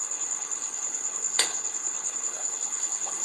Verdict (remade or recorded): remade